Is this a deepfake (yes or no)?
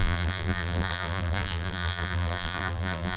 yes